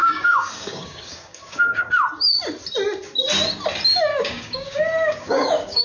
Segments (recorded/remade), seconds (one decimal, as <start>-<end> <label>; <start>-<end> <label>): 0.0-1.9 remade; 1.9-4.1 recorded; 4.1-5.8 remade